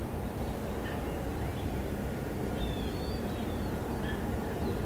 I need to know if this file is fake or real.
real